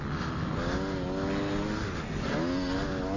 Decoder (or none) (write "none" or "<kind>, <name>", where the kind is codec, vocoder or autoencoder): none